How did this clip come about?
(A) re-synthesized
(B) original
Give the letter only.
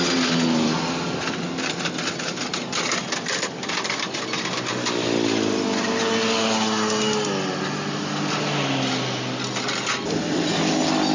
B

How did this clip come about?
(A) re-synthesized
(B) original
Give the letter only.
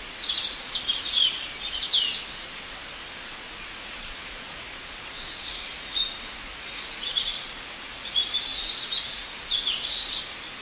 A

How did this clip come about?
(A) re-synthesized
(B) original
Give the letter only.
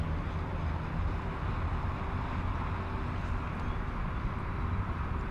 B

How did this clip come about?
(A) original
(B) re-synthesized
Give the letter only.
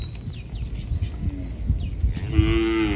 A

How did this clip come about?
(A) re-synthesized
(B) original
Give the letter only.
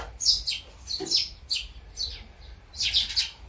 B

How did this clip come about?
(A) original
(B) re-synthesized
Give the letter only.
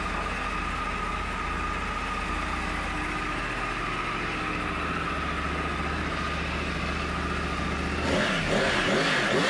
A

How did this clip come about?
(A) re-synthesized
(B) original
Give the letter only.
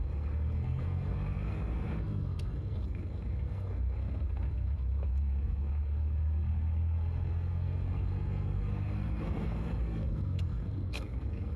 A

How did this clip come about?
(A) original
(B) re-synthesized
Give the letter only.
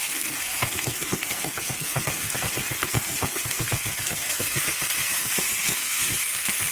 B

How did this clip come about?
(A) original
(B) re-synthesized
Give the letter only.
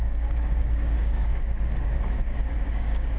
B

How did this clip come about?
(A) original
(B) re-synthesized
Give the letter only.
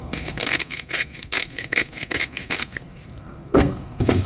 B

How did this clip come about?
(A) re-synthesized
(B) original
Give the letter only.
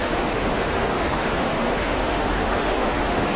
A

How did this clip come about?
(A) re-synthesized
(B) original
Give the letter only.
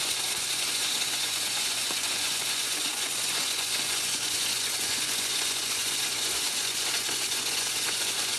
A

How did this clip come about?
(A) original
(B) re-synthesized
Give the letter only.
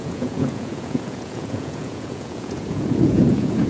B